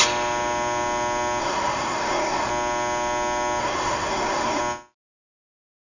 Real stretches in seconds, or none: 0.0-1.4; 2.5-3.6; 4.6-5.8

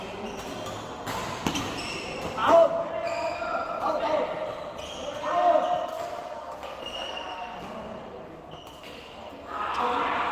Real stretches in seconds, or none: 0.0-5.9; 7.6-9.2; 9.8-10.3